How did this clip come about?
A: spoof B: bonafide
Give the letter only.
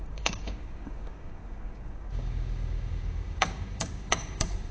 A